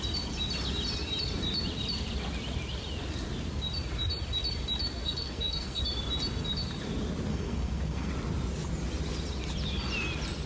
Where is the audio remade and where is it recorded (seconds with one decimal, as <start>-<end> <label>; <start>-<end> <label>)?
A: 0.0-5.0 recorded; 5.0-5.8 remade; 5.8-7.3 recorded; 7.3-8.1 remade; 8.1-10.5 recorded